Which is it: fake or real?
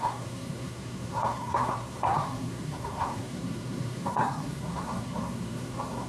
fake